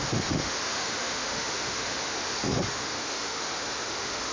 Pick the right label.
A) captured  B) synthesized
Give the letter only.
B